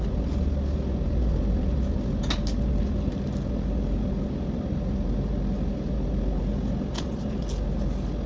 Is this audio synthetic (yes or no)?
no